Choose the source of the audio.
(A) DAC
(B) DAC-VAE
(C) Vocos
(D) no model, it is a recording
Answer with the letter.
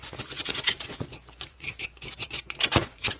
C